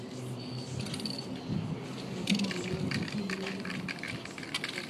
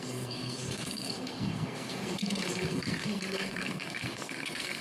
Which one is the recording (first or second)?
first